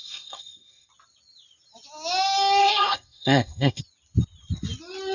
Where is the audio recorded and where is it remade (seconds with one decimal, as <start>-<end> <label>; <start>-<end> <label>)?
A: 0.0-0.9 remade; 0.9-2.6 recorded; 2.6-3.8 remade; 3.8-5.1 recorded